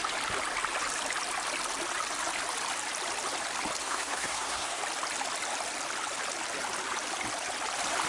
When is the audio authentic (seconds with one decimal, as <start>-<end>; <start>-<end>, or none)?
0.0-3.8; 4.8-8.1